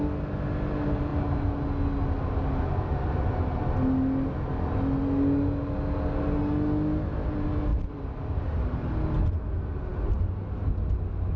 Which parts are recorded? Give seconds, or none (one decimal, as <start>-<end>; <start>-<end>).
0.0-7.7; 8.4-11.4